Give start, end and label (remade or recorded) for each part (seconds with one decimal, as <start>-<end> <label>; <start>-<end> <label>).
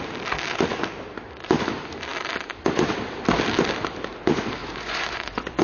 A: 0.0-4.6 recorded; 4.6-5.6 remade